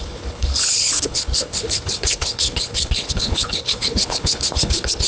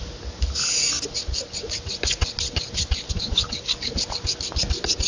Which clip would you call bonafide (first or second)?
second